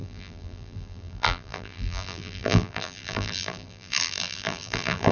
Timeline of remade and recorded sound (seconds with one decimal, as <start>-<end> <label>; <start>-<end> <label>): 0.0-5.1 remade